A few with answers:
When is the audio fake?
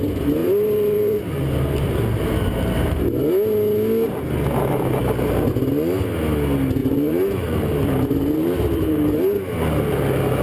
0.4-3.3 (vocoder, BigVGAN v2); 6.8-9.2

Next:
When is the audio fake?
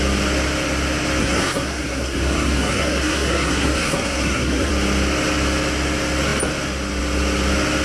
1.2-4.7 (codec, SNAC)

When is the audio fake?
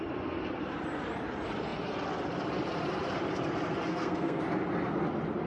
3.9-4.4 (codec, SNAC)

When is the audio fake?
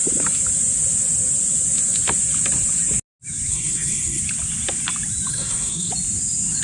3.5-4.2 (codec, SNAC); 5.3-5.9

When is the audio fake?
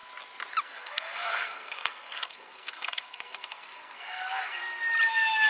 0.6-4.6 (codec, SNAC)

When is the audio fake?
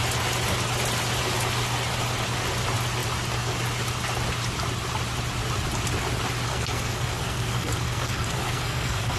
6.5-9.2 (codec, SNAC)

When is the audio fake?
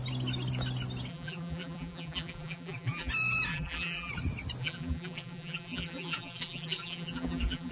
1.1-3.1 (vocoder, BigVGAN v2); 3.5-4.1; 4.6-7.7